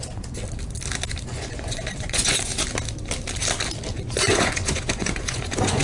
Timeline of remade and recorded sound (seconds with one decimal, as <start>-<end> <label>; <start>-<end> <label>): 0.0-0.4 remade; 0.4-1.2 recorded; 1.2-2.5 remade; 2.5-3.9 recorded; 3.9-5.8 remade

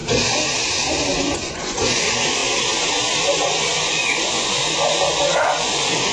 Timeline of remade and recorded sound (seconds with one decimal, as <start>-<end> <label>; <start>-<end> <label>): 0.0-1.2 recorded; 1.2-2.4 remade; 2.4-3.3 recorded; 3.3-6.1 remade